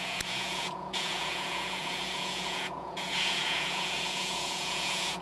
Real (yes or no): no